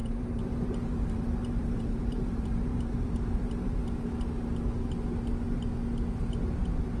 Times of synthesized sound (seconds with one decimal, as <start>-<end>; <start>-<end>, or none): 0.0-3.8; 6.4-7.0